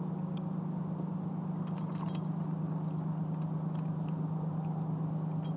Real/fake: fake